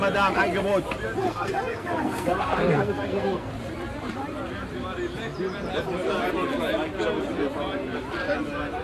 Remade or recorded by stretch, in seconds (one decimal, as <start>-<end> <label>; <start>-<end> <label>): 0.0-1.2 recorded; 1.2-3.5 remade; 3.5-8.8 recorded